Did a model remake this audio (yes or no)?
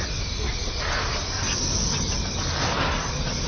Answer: no